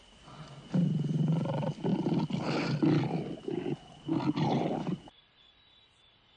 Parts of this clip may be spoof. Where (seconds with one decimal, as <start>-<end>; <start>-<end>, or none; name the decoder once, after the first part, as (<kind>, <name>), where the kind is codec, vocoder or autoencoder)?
none

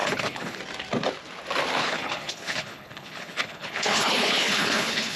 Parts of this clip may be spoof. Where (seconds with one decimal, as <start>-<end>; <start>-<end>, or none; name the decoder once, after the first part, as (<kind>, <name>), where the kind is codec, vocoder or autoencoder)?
0.0-0.6 (codec, HILCodec); 1.8-5.2

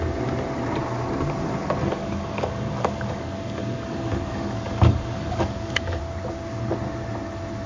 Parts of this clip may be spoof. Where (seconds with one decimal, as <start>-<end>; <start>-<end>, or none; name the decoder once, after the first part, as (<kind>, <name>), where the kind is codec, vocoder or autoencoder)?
1.8-6.0 (codec, DAC)